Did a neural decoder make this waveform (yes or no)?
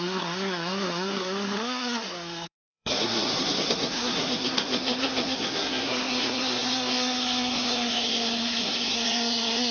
yes